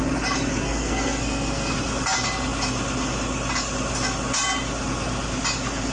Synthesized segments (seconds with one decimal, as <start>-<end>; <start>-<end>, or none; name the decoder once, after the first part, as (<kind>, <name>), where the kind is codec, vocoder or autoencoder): 0.6-1.7 (codec, SNAC)